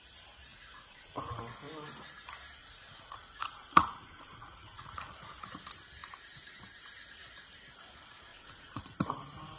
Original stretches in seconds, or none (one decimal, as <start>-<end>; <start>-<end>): 0.0-0.5; 1.4-2.6; 5.2-8.3; 9.2-9.6